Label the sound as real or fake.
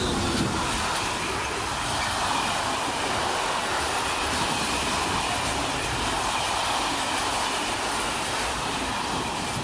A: real